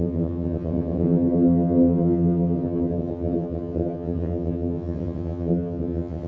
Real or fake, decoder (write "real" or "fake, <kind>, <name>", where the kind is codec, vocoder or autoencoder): fake, vocoder, HiFi-GAN